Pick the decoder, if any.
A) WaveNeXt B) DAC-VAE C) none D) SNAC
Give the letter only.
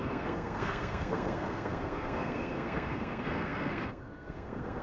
D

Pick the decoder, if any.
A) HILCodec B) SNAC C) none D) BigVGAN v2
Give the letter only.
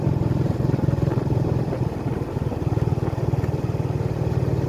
C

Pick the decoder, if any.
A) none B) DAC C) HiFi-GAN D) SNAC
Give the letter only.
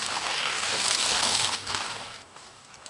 B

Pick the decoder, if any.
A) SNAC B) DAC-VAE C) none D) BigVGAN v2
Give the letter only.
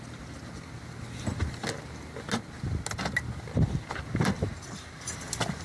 C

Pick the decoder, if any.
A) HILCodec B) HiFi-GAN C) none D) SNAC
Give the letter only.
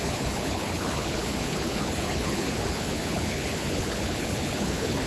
A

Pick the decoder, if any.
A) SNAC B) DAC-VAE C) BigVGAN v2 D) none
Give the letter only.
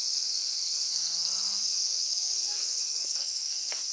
A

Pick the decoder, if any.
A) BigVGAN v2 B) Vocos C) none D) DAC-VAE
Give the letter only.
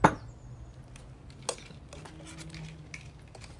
C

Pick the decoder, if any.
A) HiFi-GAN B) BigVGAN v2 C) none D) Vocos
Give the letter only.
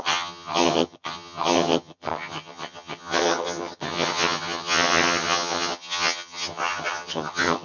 A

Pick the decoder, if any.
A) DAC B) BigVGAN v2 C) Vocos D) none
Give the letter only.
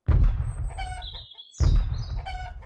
B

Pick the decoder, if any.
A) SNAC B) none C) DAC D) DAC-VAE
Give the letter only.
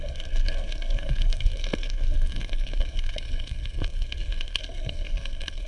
A